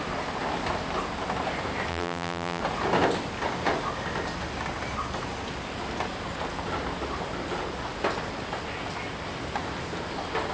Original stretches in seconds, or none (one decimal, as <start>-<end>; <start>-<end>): 0.0-1.9; 2.6-10.5